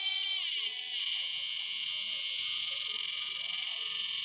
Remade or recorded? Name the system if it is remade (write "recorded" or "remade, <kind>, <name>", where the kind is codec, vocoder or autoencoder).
remade, vocoder, Vocos